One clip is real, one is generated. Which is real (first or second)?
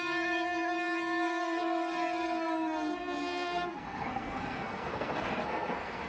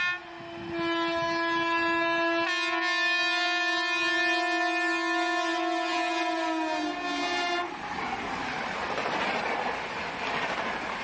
second